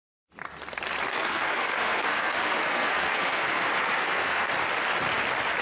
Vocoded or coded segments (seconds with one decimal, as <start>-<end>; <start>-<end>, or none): 1.1-4.5